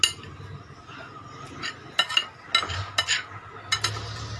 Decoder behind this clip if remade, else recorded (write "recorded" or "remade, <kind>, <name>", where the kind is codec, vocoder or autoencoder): recorded